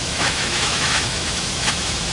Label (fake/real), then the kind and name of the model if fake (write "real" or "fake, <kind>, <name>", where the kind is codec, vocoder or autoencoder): fake, autoencoder, DAC-VAE